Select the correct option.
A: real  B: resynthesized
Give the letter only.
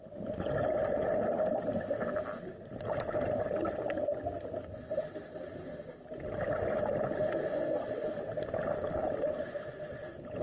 A